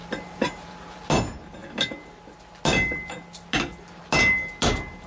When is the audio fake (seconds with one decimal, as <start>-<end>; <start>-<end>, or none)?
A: 0.0-1.1